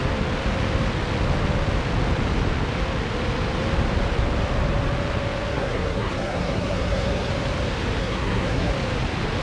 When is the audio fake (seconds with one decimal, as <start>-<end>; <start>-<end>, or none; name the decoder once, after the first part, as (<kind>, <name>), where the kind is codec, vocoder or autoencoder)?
5.5-7.3 (codec, SNAC); 8.0-8.7